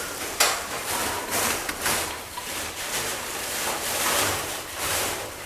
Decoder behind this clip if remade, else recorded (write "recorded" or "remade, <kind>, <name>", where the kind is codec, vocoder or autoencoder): remade, vocoder, BigVGAN v2